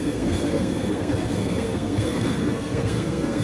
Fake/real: fake